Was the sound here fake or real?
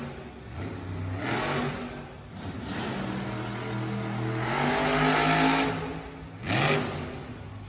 real